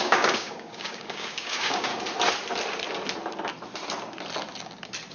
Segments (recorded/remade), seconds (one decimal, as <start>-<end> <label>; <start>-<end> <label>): 0.0-1.9 remade; 1.9-5.1 recorded